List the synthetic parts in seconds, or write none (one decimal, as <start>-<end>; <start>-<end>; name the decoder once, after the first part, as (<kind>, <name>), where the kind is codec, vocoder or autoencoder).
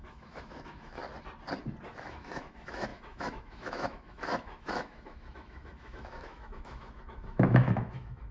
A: 0.0-1.0 (autoencoder, DAC-VAE); 2.0-8.3